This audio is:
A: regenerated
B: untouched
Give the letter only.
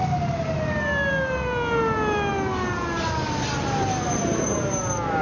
B